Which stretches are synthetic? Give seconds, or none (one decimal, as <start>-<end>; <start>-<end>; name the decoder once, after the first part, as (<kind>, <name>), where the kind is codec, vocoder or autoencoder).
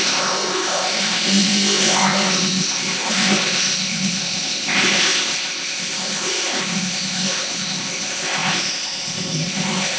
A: 0.0-10.0 (codec, ZipCodec)